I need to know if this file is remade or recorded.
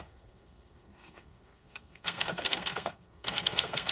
remade